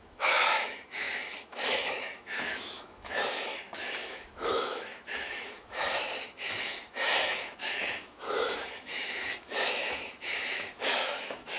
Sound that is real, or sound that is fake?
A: fake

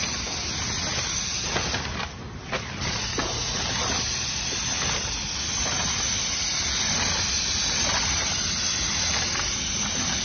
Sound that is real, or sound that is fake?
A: real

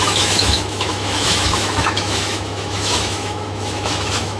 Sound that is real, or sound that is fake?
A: fake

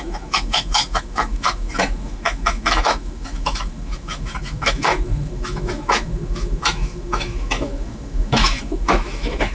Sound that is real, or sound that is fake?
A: fake